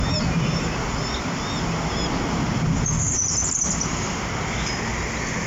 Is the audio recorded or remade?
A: recorded